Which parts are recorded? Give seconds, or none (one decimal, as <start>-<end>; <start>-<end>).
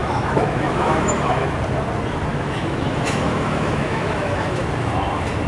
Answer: 1.5-2.3; 4.6-5.5